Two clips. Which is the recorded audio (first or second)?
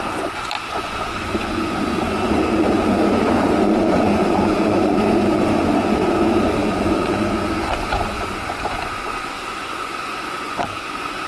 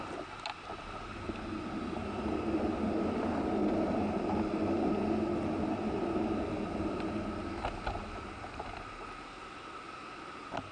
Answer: second